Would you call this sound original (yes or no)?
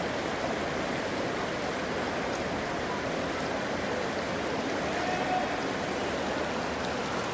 yes